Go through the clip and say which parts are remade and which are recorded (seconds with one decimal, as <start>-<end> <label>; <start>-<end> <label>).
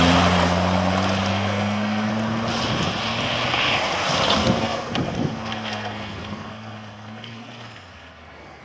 0.0-1.3 recorded; 1.3-2.1 remade; 2.1-4.4 recorded; 4.4-8.6 remade